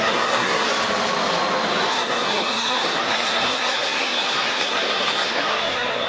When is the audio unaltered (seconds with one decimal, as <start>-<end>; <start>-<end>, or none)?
0.7-1.9